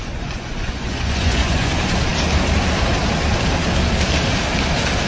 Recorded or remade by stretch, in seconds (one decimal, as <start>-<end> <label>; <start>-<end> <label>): 0.0-1.7 remade; 1.7-5.1 recorded